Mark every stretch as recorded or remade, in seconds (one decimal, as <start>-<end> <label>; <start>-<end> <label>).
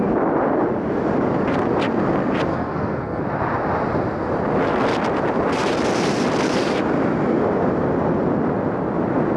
0.0-2.5 recorded; 2.5-3.2 remade; 3.2-9.4 recorded